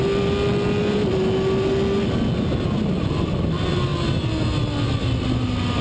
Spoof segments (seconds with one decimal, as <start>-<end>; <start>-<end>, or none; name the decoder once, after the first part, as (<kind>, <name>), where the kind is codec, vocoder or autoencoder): none